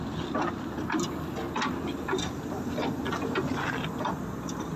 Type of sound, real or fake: real